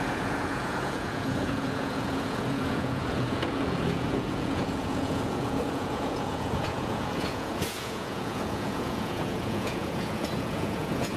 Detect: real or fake fake